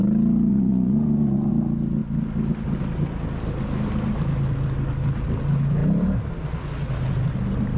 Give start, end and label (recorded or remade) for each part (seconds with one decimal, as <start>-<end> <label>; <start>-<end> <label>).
0.0-0.5 recorded; 0.5-1.5 remade; 1.5-7.8 recorded